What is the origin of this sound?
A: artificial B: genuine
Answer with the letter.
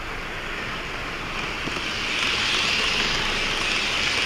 B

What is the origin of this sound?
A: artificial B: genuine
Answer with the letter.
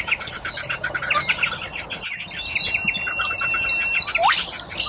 B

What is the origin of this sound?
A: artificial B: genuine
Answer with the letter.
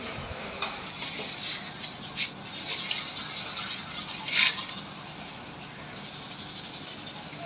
B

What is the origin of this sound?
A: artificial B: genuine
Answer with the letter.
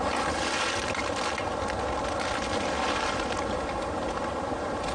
B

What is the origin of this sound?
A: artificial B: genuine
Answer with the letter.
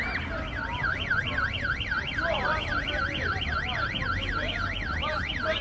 B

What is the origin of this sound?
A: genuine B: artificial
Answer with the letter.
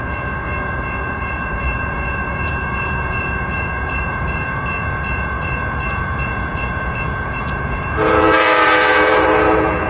B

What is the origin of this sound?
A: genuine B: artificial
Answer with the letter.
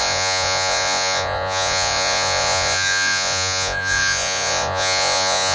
B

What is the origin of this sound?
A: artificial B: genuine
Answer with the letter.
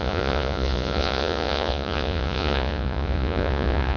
A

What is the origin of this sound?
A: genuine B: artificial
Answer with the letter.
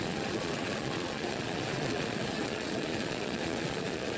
B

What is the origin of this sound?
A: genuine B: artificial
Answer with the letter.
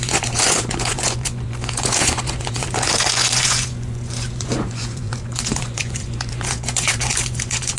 B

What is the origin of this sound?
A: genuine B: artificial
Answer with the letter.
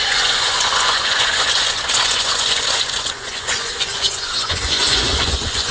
B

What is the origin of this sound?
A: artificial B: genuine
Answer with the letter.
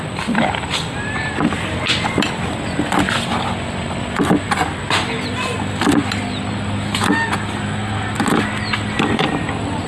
B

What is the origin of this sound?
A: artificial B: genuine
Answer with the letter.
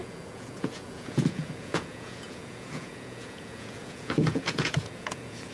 A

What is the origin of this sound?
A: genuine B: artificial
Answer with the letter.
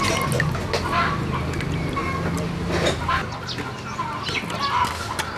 A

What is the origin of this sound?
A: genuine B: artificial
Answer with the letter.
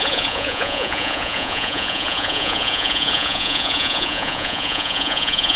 B